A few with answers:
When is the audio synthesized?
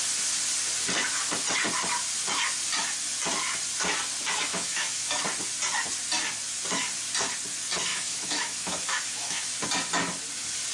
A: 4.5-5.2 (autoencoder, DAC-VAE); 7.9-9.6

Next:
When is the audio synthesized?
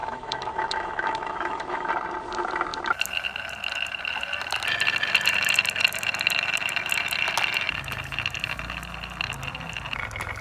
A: 0.0-1.9 (autoencoder, DAC-VAE)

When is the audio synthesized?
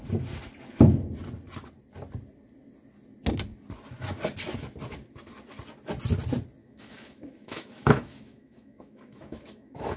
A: 6.6-10.0 (autoencoder, DAC-VAE)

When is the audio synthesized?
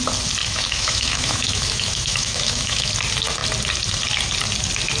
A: 0.4-2.9 (autoencoder, DAC-VAE)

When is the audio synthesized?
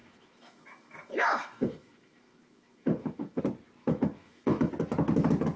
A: 0.0-3.4 (autoencoder, DAC-VAE); 3.8-4.7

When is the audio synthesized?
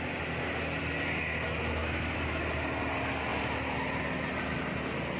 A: 1.8-2.4 (autoencoder, DAC-VAE)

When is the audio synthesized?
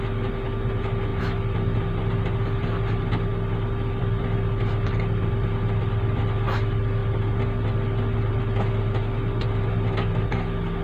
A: none